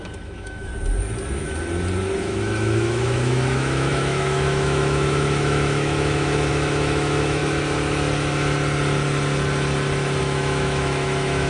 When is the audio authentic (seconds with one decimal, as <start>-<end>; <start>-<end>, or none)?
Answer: 0.7-2.2; 7.4-10.2